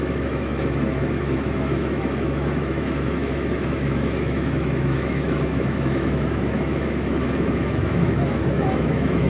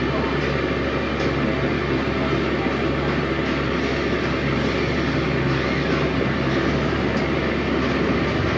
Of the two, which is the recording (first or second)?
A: second